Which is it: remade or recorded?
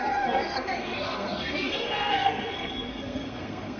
remade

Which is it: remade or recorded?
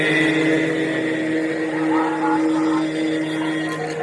recorded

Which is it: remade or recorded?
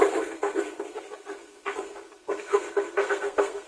remade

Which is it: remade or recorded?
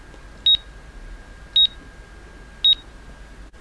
recorded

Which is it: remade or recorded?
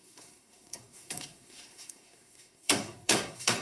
remade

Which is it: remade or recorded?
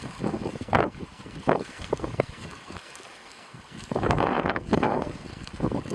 remade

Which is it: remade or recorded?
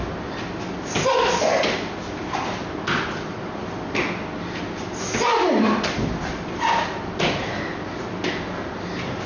recorded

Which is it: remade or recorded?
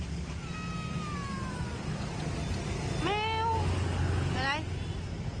recorded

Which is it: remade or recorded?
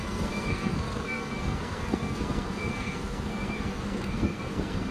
remade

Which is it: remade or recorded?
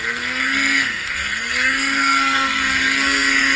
remade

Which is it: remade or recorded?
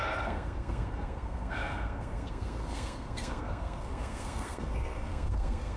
remade